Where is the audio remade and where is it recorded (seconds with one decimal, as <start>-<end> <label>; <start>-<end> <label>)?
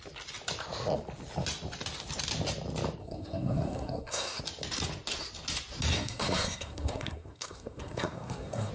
0.0-3.0 recorded; 3.0-4.4 remade; 4.4-5.9 recorded; 5.9-8.7 remade